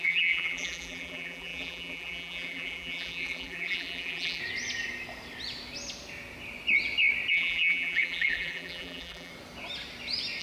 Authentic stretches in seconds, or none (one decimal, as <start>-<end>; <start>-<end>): 4.4-7.3; 9.3-10.4